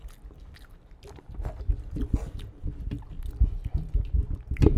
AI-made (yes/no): no